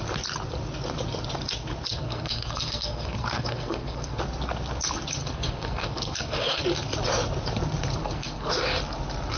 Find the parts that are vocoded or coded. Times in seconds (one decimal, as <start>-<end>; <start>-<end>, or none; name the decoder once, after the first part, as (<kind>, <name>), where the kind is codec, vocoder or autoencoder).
1.9-4.2 (codec, SNAC); 5.2-6.6; 8.0-8.5